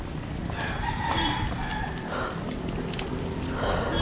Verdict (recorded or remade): recorded